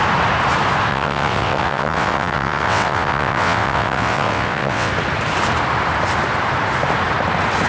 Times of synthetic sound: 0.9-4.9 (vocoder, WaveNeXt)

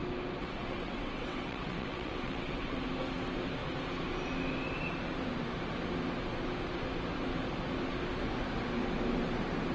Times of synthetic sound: 0.4-2.9 (vocoder, WaveNeXt)

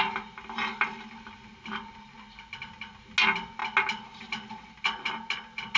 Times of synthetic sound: none

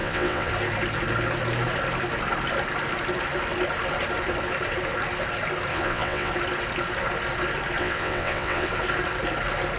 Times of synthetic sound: 0.0-0.5 (vocoder, WaveNeXt); 5.7-6.3; 7.8-8.7

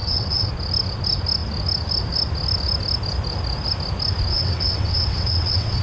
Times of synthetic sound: 0.0-0.5 (vocoder, WaveNeXt); 4.3-5.8

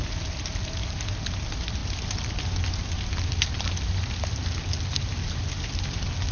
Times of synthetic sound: none

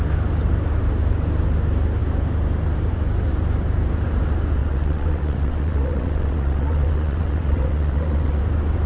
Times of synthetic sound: 4.6-8.4 (vocoder, WaveNeXt)

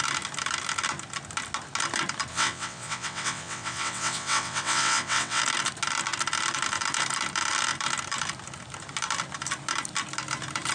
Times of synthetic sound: 2.3-5.4 (vocoder, WaveNeXt)